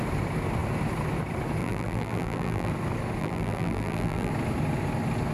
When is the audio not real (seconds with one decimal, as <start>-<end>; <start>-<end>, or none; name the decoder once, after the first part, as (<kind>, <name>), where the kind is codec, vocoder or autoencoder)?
1.6-2.7 (vocoder, BigVGAN v2); 3.2-4.3